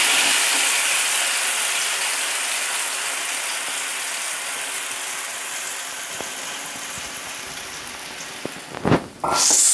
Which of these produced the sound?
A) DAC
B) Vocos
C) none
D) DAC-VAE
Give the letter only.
C